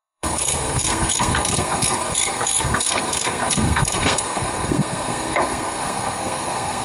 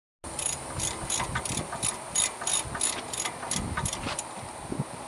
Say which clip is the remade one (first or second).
first